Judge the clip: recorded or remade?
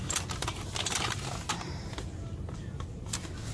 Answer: recorded